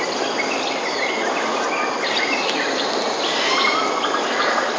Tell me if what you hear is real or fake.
fake